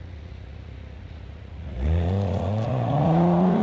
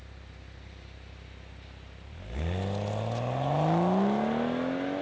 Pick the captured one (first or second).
second